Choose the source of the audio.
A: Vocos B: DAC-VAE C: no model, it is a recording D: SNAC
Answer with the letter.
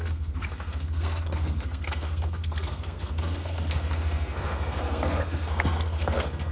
D